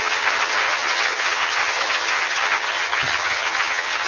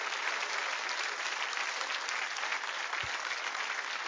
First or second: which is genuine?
second